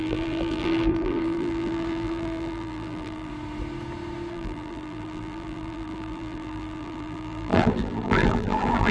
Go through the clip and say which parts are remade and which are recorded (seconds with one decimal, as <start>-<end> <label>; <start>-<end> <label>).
0.0-3.3 remade; 3.3-4.3 recorded; 4.3-8.9 remade